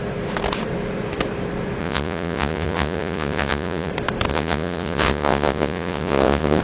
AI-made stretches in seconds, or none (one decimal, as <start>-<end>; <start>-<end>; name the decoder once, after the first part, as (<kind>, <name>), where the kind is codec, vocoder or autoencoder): 1.8-3.9 (vocoder, Vocos); 4.3-6.6

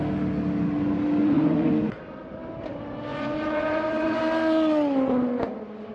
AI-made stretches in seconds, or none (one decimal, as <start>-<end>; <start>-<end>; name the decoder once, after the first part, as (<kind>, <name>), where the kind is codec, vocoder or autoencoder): 1.2-1.7 (vocoder, Vocos); 3.1-4.2

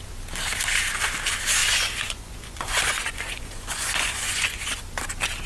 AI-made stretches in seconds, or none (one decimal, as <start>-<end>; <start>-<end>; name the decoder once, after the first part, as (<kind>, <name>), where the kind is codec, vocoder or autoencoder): 1.6-4.8 (vocoder, Vocos)

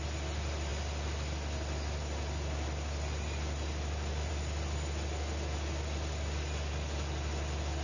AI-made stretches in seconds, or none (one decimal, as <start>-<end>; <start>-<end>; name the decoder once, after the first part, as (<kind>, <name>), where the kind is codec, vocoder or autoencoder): none

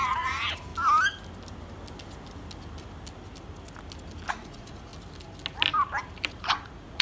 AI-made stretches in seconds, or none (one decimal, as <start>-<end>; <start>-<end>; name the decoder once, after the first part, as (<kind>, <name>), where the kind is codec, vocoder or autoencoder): 0.0-0.7 (vocoder, Vocos); 4.3-4.9; 6.3-7.0

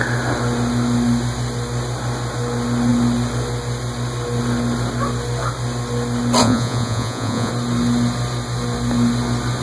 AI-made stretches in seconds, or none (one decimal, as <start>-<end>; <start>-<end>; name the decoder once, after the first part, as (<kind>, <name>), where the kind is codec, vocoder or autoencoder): 6.4-7.5 (vocoder, Vocos)

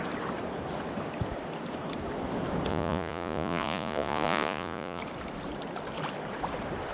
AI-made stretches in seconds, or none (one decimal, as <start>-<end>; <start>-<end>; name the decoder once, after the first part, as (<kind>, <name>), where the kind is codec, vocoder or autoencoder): 2.7-5.0 (vocoder, Vocos)

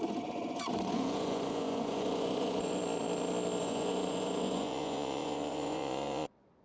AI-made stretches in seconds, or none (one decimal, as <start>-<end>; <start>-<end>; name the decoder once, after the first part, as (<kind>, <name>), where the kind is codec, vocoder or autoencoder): 0.0-2.8 (vocoder, Vocos); 3.6-6.6